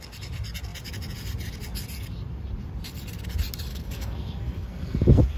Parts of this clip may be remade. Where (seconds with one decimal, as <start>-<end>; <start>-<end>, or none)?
3.7-5.4